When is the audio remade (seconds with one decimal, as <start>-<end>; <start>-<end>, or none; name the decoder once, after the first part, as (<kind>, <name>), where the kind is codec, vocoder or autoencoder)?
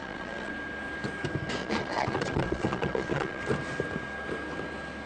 0.0-0.5 (vocoder, Vocos); 1.6-3.4